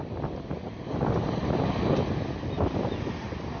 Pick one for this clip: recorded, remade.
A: recorded